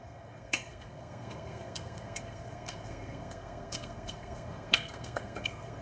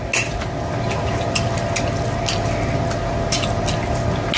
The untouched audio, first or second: second